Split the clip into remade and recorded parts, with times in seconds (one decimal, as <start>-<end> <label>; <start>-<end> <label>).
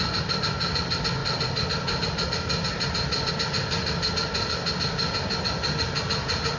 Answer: 0.0-6.6 recorded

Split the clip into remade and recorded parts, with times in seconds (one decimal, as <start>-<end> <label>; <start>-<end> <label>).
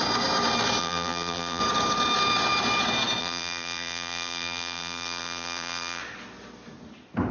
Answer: 0.0-0.8 recorded; 0.8-1.6 remade; 1.6-3.2 recorded; 3.2-6.0 remade; 6.0-7.3 recorded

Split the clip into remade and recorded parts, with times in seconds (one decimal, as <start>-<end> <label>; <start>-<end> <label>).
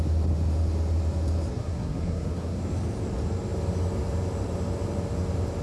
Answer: 0.0-1.6 recorded; 1.6-2.6 remade; 2.6-5.6 recorded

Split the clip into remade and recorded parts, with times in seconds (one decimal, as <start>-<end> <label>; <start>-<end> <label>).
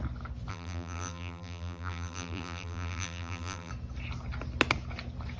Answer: 0.0-0.5 recorded; 0.5-3.7 remade; 3.7-5.4 recorded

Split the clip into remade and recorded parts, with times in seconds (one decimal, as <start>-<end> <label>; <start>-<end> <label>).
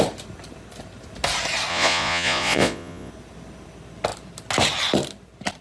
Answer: 0.0-1.7 recorded; 1.7-3.1 remade; 3.1-5.6 recorded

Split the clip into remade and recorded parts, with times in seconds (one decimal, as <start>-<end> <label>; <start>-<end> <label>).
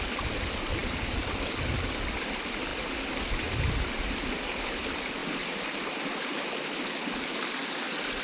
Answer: 0.0-8.2 recorded